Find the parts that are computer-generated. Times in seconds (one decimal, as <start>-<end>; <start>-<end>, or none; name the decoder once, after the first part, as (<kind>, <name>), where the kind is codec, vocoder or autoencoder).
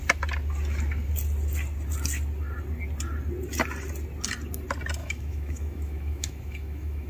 5.0-7.1 (autoencoder, DAC-VAE)